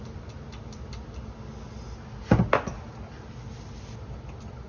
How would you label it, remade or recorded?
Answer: recorded